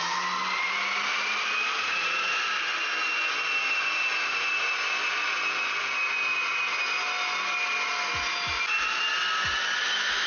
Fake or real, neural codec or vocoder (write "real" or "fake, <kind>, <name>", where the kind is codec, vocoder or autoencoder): real